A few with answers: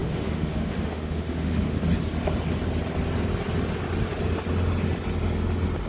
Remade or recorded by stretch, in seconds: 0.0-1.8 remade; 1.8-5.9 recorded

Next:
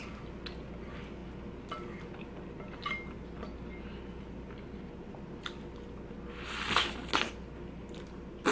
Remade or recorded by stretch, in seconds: 0.0-8.5 recorded

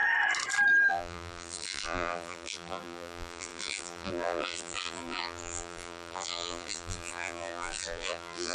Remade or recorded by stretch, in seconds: 0.0-0.9 recorded; 0.9-8.5 remade

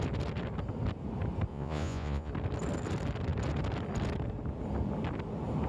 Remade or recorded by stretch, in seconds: 0.0-1.5 recorded; 1.5-2.3 remade; 2.3-5.7 recorded

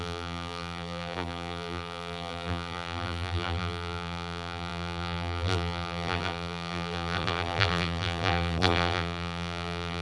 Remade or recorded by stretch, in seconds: 0.0-10.0 remade

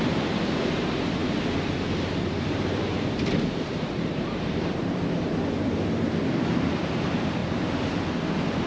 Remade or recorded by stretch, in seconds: 0.0-5.3 remade; 5.3-6.7 recorded; 6.7-7.4 remade; 7.4-8.2 recorded; 8.2-8.7 remade